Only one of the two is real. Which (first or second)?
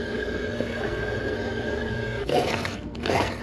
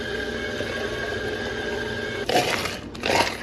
second